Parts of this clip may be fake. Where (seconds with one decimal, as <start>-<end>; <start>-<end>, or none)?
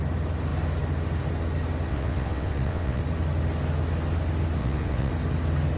1.9-3.0; 4.6-5.1